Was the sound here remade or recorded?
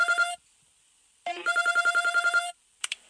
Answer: recorded